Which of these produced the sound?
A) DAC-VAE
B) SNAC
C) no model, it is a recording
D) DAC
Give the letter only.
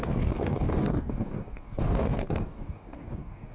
D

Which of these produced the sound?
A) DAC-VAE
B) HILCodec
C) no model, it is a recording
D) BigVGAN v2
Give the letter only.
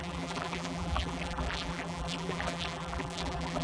D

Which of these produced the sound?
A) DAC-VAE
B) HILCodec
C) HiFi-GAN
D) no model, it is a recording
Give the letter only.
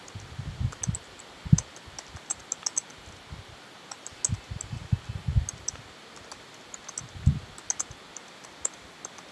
D